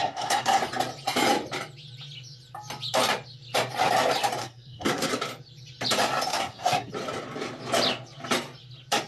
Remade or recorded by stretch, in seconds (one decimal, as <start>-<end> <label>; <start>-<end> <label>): 0.0-0.6 remade; 0.6-4.4 recorded; 4.4-5.1 remade; 5.1-6.3 recorded; 6.3-6.9 remade; 6.9-9.1 recorded

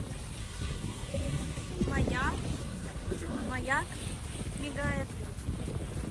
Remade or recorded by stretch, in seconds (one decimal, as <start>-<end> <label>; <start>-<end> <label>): 0.0-0.4 recorded; 0.4-1.7 remade; 1.7-2.6 recorded; 2.6-3.5 remade; 3.5-6.1 recorded

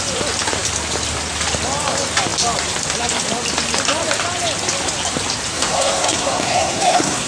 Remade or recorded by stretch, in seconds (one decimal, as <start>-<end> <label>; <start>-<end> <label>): 0.0-5.5 recorded; 5.5-7.3 remade

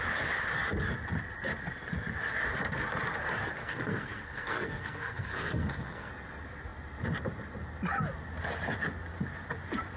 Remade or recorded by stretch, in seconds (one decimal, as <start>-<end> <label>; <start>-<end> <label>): 0.0-3.6 recorded; 3.6-6.1 remade; 6.1-10.0 recorded

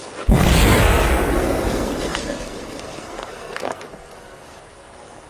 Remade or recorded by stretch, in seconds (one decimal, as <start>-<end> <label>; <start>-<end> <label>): 0.0-5.3 remade

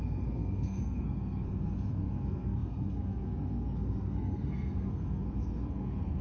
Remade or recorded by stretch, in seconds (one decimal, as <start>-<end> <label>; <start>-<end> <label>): 0.0-6.2 remade